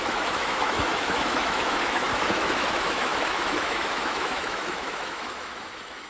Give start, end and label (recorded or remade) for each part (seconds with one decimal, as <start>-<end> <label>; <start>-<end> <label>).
0.0-6.1 remade